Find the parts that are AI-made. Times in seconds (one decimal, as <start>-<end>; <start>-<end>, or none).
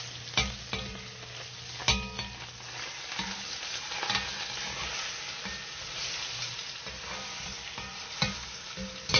none